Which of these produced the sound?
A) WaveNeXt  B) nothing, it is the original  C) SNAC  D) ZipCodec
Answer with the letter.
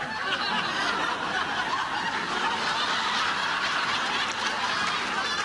B